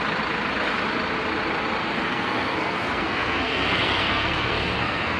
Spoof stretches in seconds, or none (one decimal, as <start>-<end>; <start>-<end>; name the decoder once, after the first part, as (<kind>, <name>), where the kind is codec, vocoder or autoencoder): 1.8-5.2 (codec, SNAC)